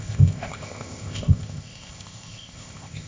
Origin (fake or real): fake